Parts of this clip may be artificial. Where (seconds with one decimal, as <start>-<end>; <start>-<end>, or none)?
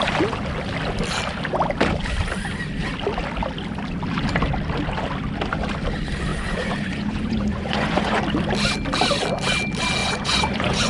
6.3-8.2; 10.0-10.9